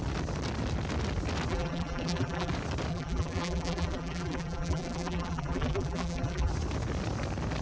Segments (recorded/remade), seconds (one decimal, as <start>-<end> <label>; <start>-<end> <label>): 0.0-1.5 recorded; 1.5-2.5 remade; 2.5-2.9 recorded; 2.9-6.5 remade; 6.5-7.6 recorded